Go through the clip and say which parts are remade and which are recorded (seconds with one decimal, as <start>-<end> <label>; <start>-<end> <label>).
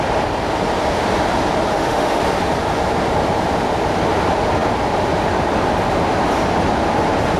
0.0-1.7 recorded; 1.7-2.2 remade; 2.2-7.4 recorded